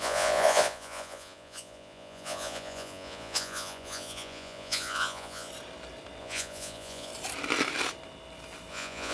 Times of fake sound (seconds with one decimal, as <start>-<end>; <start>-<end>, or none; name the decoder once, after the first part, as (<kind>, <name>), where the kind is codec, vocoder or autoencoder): 0.0-5.5 (vocoder, Vocos); 6.2-7.1; 8.7-9.1